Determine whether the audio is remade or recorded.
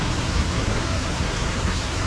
remade